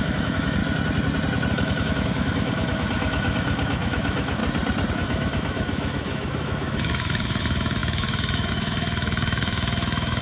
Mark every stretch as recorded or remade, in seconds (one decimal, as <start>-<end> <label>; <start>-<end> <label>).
0.0-0.6 remade; 0.6-1.5 recorded; 1.5-4.4 remade; 4.4-4.9 recorded; 4.9-10.2 remade